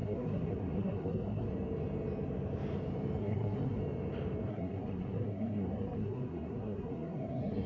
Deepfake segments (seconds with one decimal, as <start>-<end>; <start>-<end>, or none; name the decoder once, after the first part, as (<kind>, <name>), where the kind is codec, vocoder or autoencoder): 0.0-1.5 (codec, SNAC); 3.2-3.8; 4.5-7.7